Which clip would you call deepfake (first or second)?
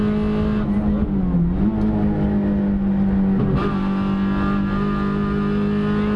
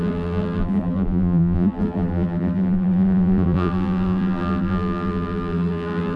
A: second